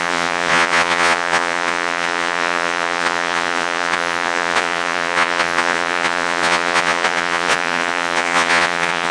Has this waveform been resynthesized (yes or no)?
yes